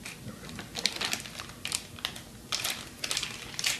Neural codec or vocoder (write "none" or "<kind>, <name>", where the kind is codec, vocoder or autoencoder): none